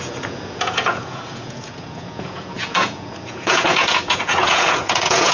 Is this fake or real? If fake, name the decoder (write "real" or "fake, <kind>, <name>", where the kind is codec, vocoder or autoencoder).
fake, vocoder, Vocos